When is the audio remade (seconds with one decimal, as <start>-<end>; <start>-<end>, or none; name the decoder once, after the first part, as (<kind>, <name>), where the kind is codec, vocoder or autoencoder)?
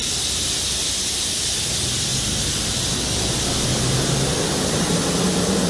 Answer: none